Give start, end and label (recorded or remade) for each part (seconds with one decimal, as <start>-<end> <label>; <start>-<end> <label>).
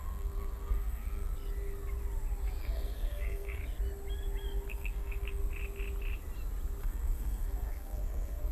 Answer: 0.0-1.3 remade; 1.3-2.6 recorded; 2.6-3.6 remade; 3.6-4.7 recorded; 4.7-5.4 remade; 5.4-6.8 recorded; 6.8-8.5 remade